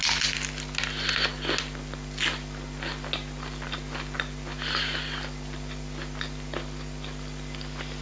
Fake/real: real